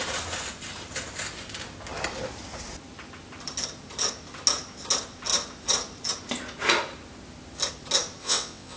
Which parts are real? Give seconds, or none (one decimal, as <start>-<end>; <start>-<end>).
0.0-8.2